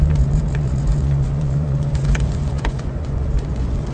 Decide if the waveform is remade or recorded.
remade